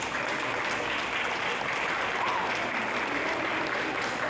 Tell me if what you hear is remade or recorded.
recorded